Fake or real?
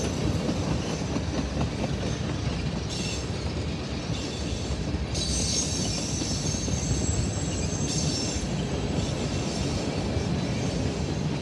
real